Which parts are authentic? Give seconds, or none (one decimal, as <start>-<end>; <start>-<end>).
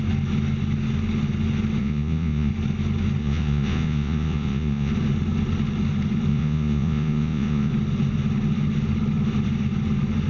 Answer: 0.0-1.8; 2.5-3.2; 4.9-6.3; 7.7-10.3